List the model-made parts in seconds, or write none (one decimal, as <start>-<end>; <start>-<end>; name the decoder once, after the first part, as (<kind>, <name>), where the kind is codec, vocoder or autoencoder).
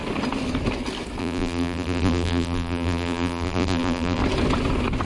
1.2-4.2 (vocoder, BigVGAN v2)